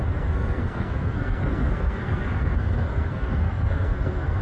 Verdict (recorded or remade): remade